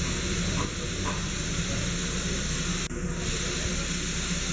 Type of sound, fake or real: real